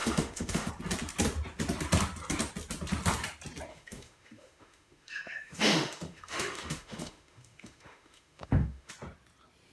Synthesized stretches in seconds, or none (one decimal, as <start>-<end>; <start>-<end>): 0.0-0.7; 3.7-8.9